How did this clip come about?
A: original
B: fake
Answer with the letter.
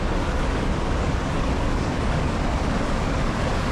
B